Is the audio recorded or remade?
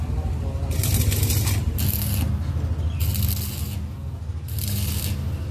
recorded